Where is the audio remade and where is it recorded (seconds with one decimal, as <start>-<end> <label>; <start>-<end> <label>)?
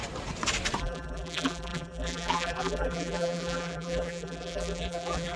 0.0-0.8 recorded; 0.8-5.4 remade